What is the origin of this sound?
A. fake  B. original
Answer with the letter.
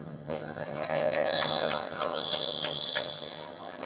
A